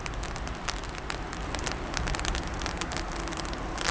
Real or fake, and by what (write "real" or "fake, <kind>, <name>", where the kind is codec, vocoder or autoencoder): real